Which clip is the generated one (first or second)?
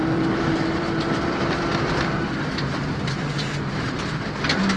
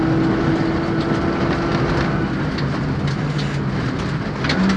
first